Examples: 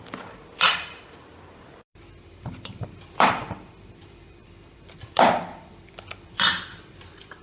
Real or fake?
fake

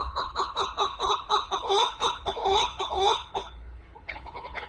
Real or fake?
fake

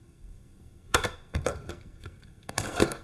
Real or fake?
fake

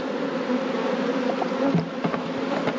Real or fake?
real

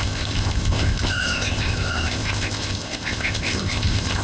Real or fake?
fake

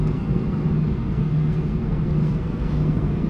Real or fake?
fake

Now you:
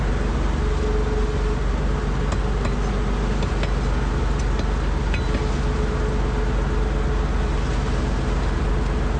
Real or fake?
real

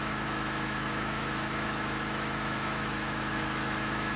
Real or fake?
fake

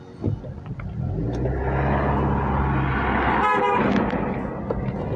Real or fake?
real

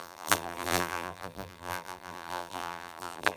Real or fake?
fake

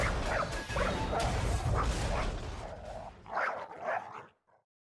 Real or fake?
real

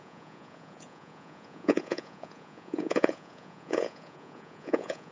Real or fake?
fake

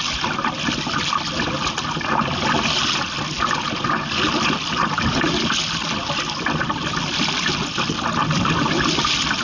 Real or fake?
real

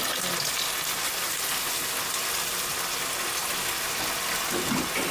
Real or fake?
real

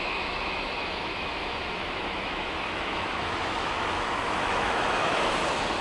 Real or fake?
fake